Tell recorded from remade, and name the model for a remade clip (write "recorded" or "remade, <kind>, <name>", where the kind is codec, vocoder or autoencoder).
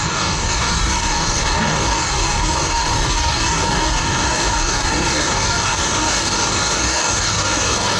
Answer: remade, codec, DAC